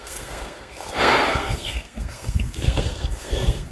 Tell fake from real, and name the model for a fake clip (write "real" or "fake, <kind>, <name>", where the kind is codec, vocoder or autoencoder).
fake, codec, SNAC